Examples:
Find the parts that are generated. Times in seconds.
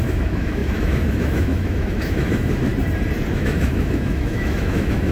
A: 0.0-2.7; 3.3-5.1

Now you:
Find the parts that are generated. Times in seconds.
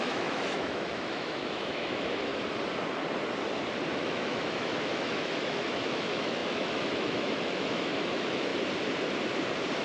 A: 0.0-2.3; 3.9-8.5